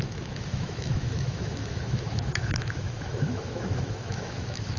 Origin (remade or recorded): remade